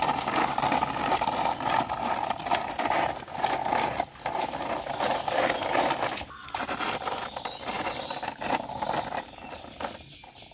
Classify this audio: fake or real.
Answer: real